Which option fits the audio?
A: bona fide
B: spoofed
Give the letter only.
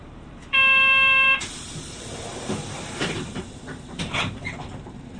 B